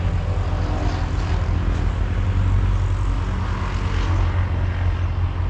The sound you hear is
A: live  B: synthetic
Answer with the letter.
A